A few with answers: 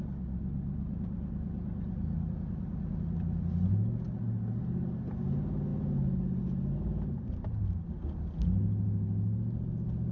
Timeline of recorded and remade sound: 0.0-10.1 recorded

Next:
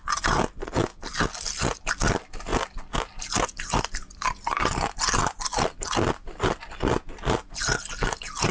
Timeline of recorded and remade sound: 0.0-8.5 recorded